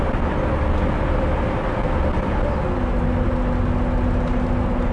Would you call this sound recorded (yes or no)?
yes